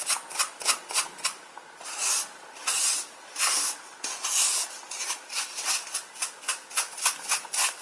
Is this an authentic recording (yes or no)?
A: yes